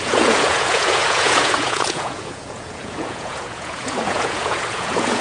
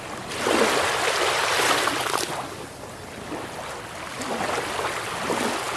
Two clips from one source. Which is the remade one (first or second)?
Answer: first